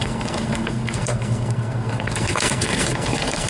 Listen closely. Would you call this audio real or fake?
fake